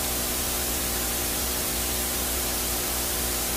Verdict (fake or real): fake